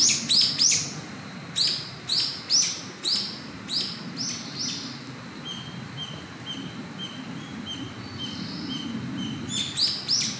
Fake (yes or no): no